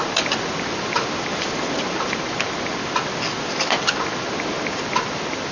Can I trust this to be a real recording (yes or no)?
yes